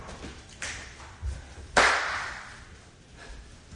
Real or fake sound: real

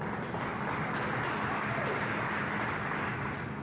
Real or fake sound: real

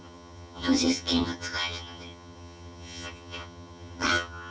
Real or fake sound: fake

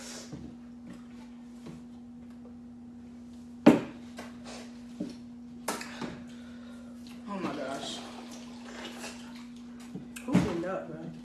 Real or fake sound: real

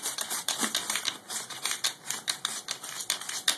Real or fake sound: real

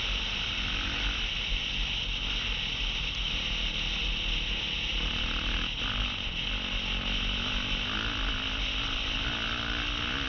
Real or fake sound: real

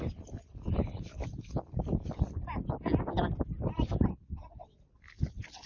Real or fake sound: real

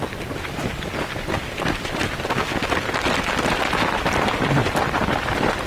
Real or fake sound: real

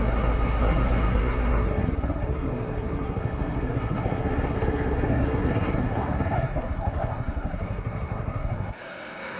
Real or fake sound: fake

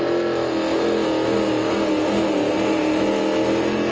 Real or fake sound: real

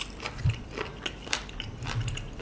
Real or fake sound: fake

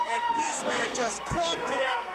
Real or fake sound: fake